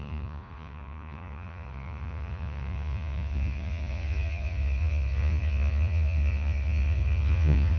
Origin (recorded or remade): remade